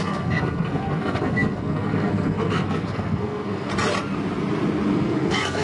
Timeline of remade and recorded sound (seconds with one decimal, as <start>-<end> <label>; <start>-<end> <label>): 0.0-3.7 remade; 3.7-4.9 recorded; 4.9-5.6 remade